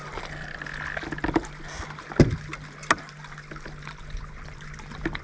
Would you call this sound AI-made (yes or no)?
no